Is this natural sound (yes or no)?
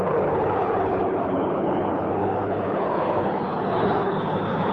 no